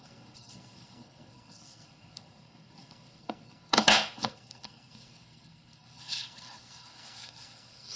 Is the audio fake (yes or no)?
yes